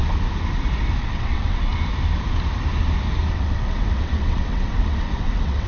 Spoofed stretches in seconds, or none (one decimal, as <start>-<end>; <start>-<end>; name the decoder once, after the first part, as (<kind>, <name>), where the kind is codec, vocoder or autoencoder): 1.0-1.7 (vocoder, WaveNeXt); 3.3-5.7